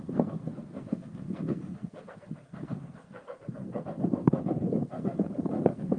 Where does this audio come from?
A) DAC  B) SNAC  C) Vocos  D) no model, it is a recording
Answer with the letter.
B